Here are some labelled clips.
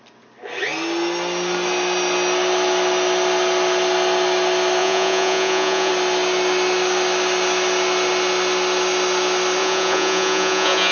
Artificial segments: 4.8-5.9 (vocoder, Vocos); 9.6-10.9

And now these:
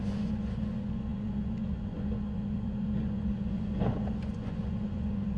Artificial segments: 0.0-5.4 (vocoder, Vocos)

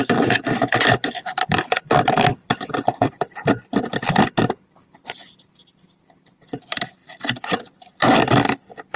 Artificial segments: 2.3-3.8 (vocoder, BigVGAN v2)

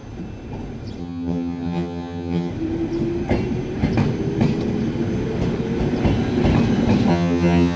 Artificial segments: 1.0-2.5 (vocoder, HiFi-GAN); 7.1-7.8

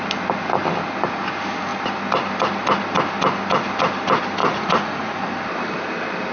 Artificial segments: 4.4-5.3 (vocoder, Vocos)

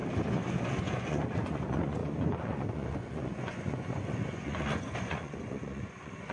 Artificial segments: 0.6-6.3 (vocoder, Vocos)

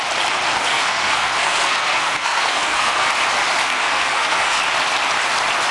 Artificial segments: 0.7-3.1 (codec, SNAC); 3.6-4.6

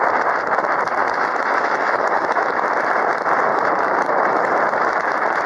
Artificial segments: 1.0-2.5 (autoencoder, DAC-VAE); 3.5-4.6